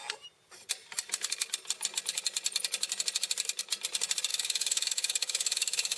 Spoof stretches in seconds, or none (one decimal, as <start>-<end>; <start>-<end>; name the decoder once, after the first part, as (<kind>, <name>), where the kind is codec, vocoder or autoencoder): 4.3-6.0 (autoencoder, DAC-VAE)